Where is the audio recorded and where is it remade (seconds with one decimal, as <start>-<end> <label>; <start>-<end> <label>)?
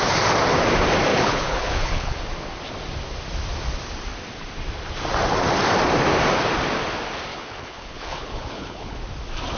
0.0-1.1 recorded; 1.1-2.2 remade; 2.2-7.3 recorded; 7.3-9.0 remade; 9.0-9.6 recorded